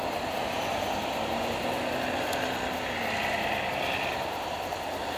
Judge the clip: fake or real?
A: real